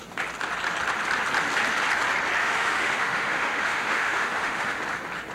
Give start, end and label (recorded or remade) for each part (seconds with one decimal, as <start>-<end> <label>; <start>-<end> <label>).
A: 0.0-2.4 recorded; 2.4-4.8 remade; 4.8-5.3 recorded